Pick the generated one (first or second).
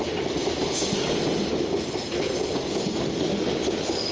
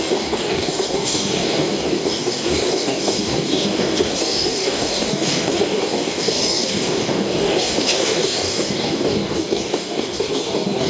second